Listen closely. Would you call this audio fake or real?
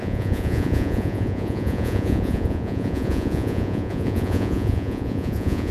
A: fake